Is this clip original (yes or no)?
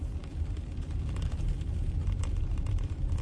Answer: no